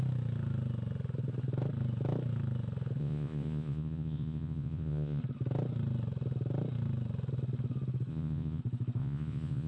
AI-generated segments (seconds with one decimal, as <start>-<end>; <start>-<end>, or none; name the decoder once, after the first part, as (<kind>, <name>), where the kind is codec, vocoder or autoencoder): 3.0-5.2 (vocoder, Vocos); 8.1-8.6; 9.0-9.7